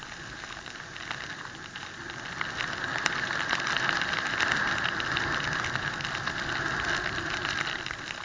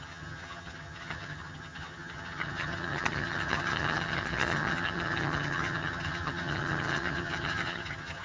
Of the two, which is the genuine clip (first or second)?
first